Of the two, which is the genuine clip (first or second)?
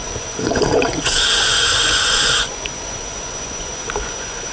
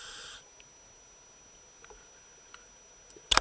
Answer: second